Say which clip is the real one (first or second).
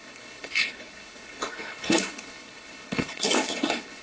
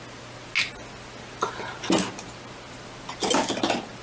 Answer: second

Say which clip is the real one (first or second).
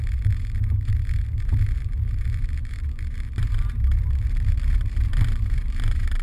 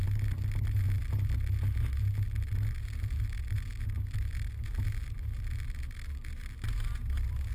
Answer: second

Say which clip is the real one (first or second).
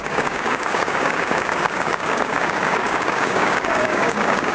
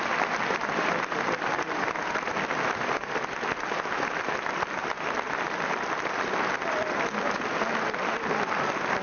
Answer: second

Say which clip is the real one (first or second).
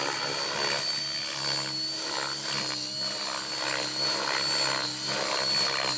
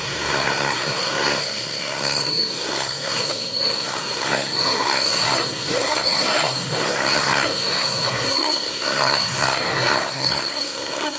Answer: first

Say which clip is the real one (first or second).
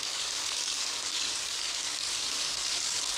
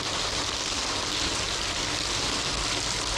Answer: second